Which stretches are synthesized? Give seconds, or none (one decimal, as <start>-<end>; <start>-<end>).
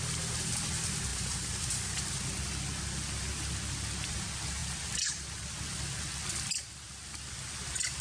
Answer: 1.1-2.0